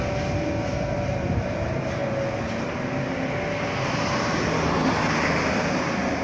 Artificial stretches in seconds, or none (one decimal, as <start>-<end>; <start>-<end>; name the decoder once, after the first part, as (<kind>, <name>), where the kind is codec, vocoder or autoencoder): none